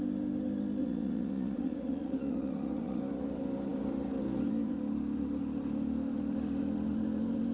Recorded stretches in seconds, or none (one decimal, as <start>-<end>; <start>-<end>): 0.0-0.8; 3.0-7.5